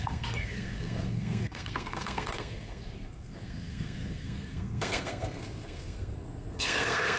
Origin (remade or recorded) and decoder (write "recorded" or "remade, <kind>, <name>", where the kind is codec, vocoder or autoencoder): remade, codec, SNAC